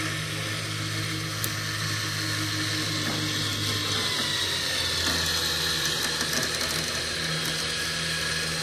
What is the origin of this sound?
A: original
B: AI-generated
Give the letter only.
A